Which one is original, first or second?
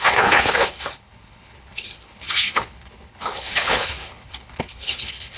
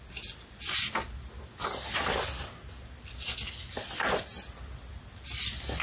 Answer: second